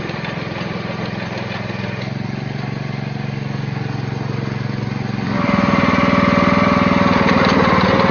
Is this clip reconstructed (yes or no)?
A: no